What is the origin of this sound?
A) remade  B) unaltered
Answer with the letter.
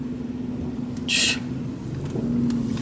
B